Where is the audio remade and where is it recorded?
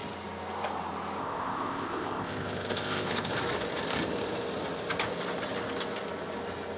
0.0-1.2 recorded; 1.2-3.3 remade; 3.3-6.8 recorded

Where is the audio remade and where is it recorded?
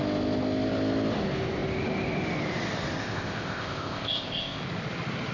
0.0-3.0 recorded; 3.0-4.6 remade; 4.6-5.3 recorded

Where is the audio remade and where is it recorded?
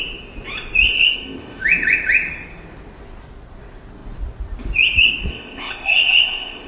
0.0-0.9 recorded; 0.9-1.6 remade; 1.6-5.3 recorded; 5.3-6.7 remade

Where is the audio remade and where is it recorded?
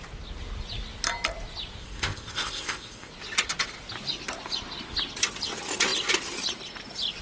0.0-1.8 recorded; 1.8-3.1 remade; 3.1-7.2 recorded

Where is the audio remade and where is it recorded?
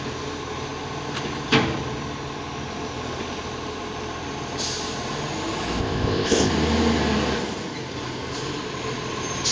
0.0-5.8 recorded; 5.8-6.5 remade; 6.5-9.5 recorded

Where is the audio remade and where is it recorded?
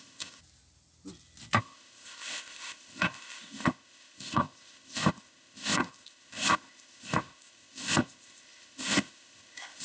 0.0-0.4 remade; 0.4-1.6 recorded; 1.6-9.8 remade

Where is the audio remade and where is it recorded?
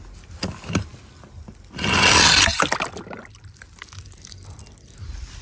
0.0-5.4 recorded